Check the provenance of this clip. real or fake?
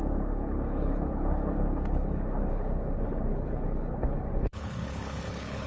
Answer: fake